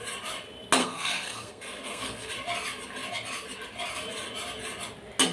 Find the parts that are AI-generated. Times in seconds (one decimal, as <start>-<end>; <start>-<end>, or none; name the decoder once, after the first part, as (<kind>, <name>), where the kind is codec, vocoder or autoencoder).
0.8-2.3 (codec, SNAC)